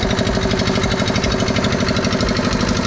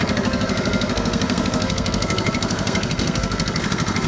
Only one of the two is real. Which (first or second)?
first